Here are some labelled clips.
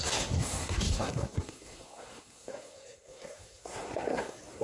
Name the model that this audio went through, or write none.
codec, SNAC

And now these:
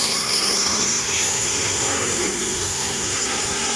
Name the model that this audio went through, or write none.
codec, SNAC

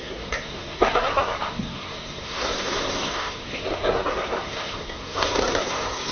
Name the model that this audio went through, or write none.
codec, SNAC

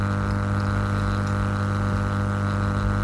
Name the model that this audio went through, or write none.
none